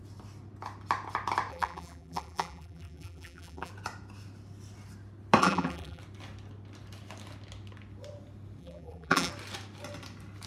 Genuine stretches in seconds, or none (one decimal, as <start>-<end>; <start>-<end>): 0.0-1.5; 3.7-5.4; 6.0-8.6; 9.3-10.5